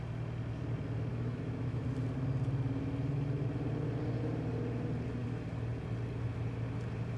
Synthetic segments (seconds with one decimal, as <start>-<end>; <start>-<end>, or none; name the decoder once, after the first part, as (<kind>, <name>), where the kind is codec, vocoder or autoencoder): 1.1-1.8 (autoencoder, DAC-VAE)